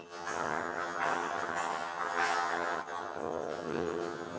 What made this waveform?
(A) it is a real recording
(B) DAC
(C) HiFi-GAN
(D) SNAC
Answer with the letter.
C